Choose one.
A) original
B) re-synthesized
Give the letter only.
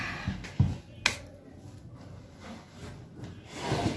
A